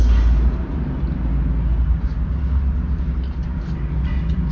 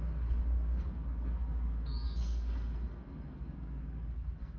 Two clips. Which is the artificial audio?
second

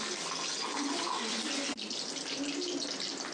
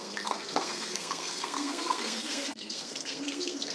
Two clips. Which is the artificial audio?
second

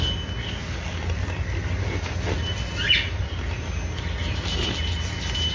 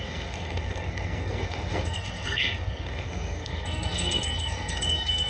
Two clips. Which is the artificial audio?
second